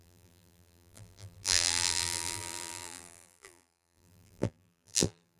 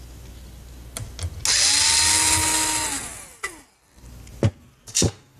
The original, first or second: second